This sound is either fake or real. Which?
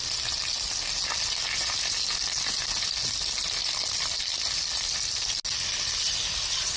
real